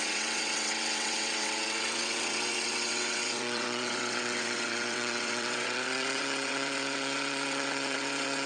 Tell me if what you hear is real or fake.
fake